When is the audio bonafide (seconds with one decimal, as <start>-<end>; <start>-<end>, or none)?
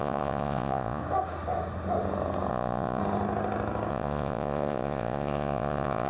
1.0-2.5; 3.0-3.9